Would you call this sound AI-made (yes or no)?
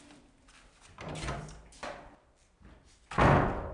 no